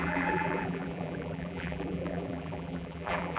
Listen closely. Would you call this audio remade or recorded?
remade